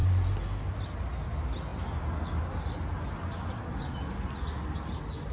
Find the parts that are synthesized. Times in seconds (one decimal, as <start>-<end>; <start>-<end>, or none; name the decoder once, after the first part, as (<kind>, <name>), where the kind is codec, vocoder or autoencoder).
none